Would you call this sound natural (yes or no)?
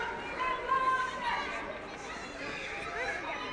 yes